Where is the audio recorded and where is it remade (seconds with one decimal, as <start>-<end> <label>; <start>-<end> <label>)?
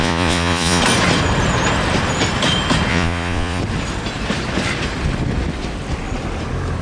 0.0-0.8 remade; 0.8-2.9 recorded; 2.9-3.6 remade; 3.6-6.8 recorded